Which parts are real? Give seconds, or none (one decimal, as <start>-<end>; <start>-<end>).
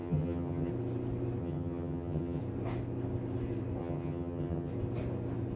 0.7-1.4; 2.4-3.8; 4.7-5.6